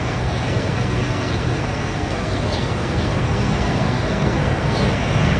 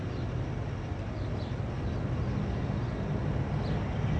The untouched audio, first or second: second